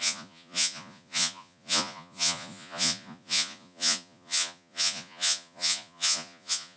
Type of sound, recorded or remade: remade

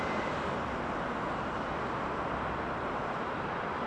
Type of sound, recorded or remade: recorded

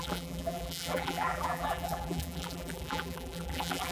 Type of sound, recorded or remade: remade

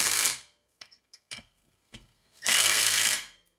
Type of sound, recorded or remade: remade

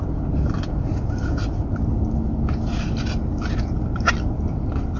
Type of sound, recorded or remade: recorded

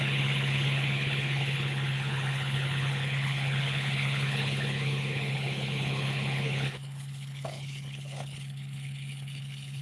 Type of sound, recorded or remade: remade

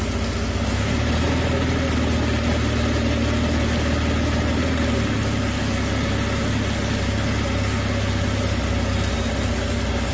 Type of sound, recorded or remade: recorded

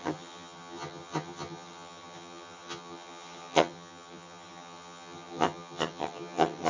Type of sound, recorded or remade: remade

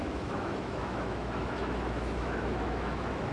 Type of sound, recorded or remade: remade